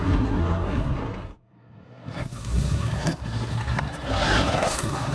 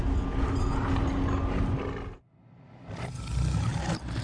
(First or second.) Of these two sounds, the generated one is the first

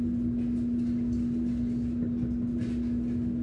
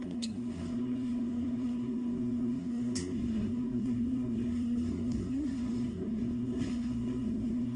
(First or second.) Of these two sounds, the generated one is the second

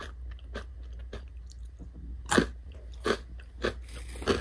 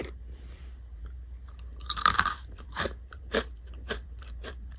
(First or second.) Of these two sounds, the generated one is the second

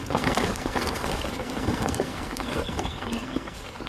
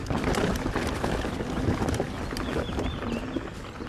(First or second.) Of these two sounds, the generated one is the first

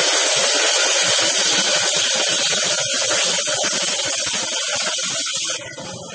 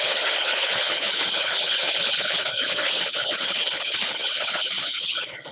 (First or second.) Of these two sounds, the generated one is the second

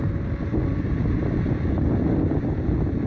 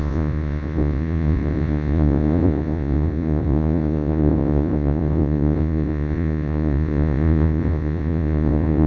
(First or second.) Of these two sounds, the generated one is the second